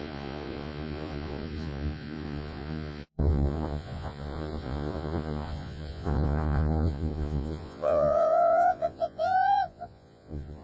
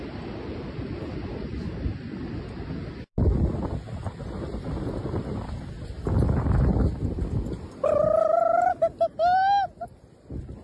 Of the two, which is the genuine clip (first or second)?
second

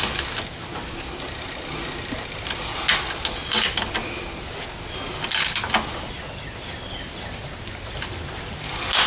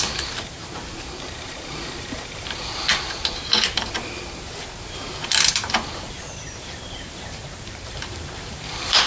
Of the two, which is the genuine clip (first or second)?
first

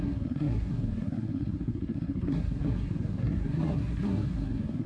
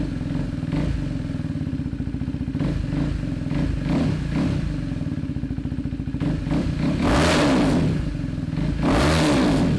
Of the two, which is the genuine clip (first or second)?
second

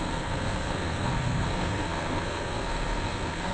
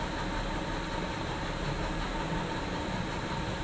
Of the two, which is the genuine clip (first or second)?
second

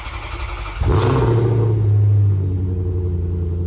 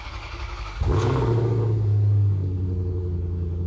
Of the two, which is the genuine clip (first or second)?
first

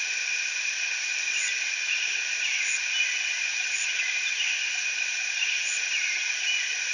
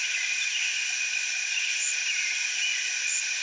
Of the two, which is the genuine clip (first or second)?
first